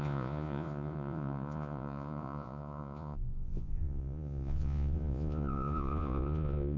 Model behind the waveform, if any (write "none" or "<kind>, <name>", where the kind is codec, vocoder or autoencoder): vocoder, Vocos